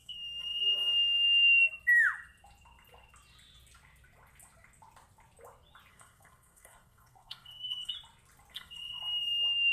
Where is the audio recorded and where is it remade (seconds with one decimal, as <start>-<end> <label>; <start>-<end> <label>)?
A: 0.0-1.6 remade; 1.6-5.9 recorded; 5.9-7.9 remade; 7.9-8.5 recorded; 8.5-9.0 remade; 9.0-9.7 recorded